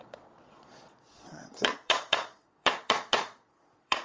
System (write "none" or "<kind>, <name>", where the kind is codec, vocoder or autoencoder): vocoder, Vocos